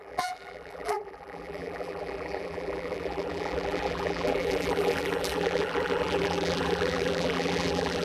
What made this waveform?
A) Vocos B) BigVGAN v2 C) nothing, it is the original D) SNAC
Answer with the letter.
B